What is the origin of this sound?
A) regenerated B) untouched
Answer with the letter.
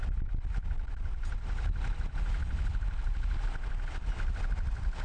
B